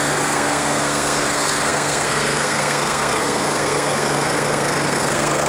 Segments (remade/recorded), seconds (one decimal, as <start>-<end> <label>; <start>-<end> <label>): 0.0-5.5 remade